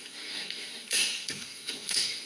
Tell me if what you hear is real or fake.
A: fake